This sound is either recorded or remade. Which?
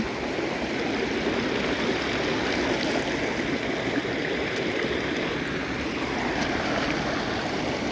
recorded